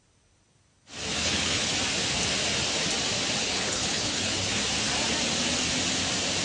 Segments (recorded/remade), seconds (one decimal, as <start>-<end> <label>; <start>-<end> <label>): 0.0-1.1 recorded; 1.1-1.7 remade; 1.7-3.4 recorded; 3.4-4.6 remade; 4.6-6.4 recorded